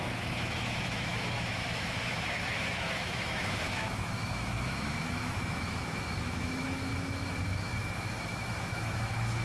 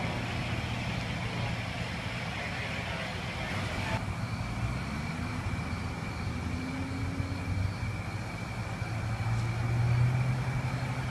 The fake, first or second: first